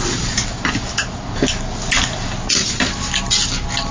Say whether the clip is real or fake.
real